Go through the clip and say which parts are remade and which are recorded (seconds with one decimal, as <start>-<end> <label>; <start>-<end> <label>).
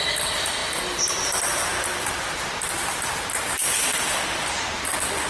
0.0-5.3 recorded